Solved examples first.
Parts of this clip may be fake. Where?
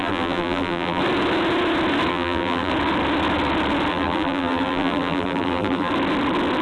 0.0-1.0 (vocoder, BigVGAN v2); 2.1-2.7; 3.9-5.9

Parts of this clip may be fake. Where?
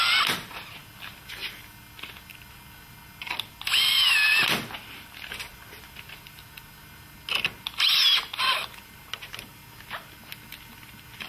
none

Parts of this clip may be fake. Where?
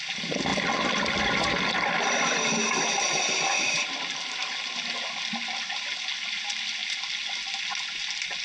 none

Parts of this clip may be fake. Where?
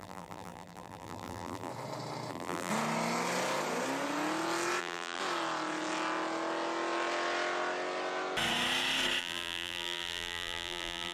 0.0-1.7 (vocoder, BigVGAN v2); 2.3-2.7; 4.8-5.2; 9.2-11.1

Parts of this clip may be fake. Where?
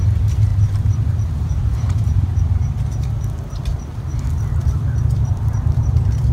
0.5-2.5 (vocoder, BigVGAN v2); 4.6-6.3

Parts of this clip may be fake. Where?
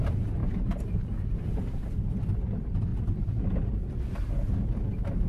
0.4-2.1 (vocoder, BigVGAN v2)